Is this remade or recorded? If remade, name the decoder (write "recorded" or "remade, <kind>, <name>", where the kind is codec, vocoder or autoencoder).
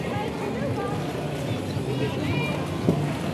recorded